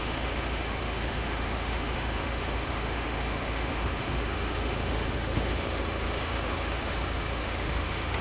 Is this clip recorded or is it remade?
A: remade